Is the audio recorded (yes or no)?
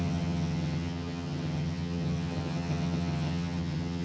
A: no